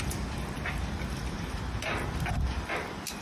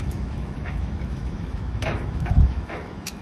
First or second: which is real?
first